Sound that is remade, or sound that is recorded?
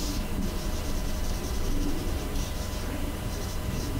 remade